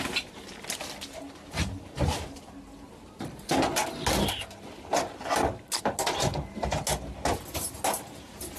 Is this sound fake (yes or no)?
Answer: no